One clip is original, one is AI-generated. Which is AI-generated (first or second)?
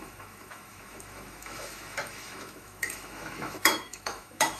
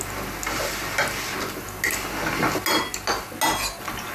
first